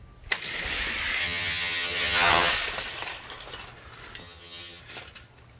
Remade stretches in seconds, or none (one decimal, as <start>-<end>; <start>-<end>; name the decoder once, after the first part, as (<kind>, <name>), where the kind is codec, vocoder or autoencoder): 1.2-2.5 (vocoder, HiFi-GAN); 4.2-4.8